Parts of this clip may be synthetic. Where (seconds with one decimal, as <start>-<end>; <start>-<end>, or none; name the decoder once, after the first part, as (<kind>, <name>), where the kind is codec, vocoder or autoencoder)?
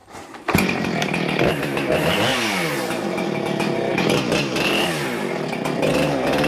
0.0-1.5 (vocoder, BigVGAN v2)